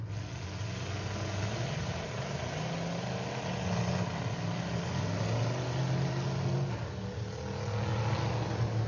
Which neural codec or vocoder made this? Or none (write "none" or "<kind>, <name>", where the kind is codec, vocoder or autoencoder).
none